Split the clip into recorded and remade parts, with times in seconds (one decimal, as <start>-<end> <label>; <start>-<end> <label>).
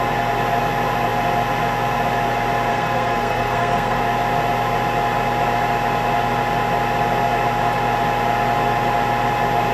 0.0-2.7 recorded; 2.7-4.0 remade; 4.0-9.7 recorded